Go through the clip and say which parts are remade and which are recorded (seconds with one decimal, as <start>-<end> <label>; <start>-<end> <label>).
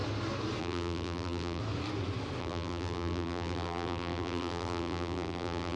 0.0-0.6 recorded; 0.6-1.6 remade; 1.6-2.4 recorded; 2.4-5.8 remade